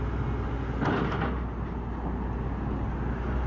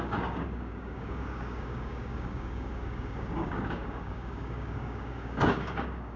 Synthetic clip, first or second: second